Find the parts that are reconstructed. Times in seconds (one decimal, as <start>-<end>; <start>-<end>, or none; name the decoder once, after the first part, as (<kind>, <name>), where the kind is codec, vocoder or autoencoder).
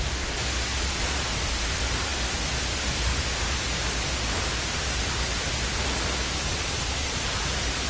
0.7-1.3 (vocoder, Vocos); 6.5-7.3